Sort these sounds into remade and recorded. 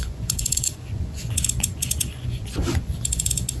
remade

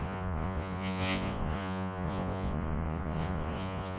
remade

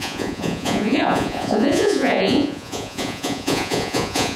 remade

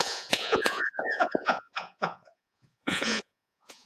remade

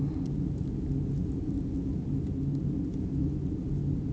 recorded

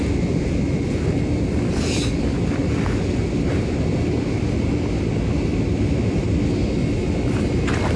recorded